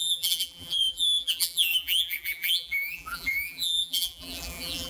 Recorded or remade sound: remade